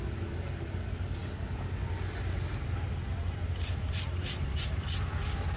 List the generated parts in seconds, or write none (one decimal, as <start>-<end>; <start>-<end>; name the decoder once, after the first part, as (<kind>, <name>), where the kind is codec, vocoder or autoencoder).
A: none